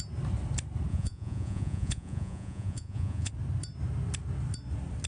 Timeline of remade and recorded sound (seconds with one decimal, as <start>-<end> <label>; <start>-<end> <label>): 0.0-0.9 recorded; 0.9-3.3 remade; 3.3-5.1 recorded